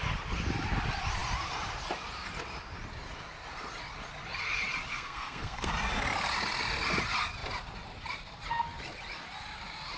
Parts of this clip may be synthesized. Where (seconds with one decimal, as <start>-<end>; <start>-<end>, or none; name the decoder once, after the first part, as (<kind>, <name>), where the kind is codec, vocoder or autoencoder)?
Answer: 4.9-5.7 (codec, SNAC)